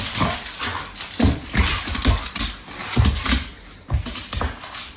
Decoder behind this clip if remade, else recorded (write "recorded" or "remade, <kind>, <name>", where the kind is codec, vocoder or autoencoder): recorded